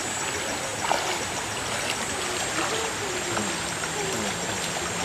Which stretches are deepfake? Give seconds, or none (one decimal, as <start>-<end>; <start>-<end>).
none